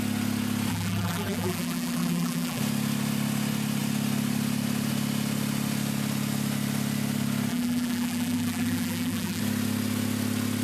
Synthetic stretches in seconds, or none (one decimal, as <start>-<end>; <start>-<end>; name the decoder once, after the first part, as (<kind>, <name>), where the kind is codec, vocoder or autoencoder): 0.7-2.6 (vocoder, BigVGAN v2); 7.5-9.4